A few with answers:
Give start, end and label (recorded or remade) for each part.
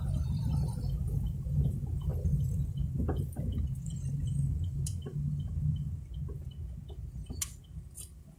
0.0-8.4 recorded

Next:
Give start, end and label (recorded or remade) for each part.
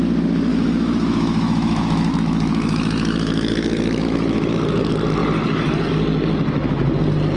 0.0-0.5 recorded; 0.5-4.6 remade; 4.6-7.4 recorded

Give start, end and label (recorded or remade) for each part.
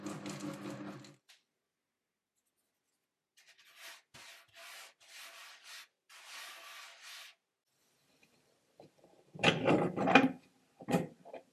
0.0-11.5 recorded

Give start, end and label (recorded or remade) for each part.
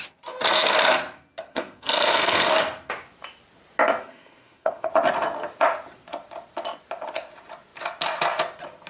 0.0-1.5 recorded; 1.5-2.5 remade; 2.5-4.0 recorded; 4.0-4.9 remade; 4.9-8.9 recorded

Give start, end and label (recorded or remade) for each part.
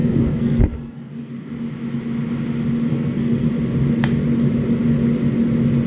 0.0-1.5 remade; 1.5-2.9 recorded; 2.9-3.5 remade; 3.5-5.9 recorded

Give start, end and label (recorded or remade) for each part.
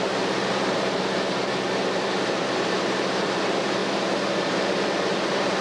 0.0-3.8 remade; 3.8-4.4 recorded; 4.4-5.6 remade